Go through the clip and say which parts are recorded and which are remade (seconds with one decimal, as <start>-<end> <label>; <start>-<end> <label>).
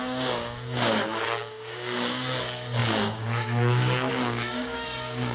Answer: 0.0-5.3 remade